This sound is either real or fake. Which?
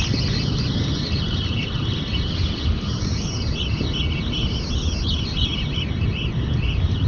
real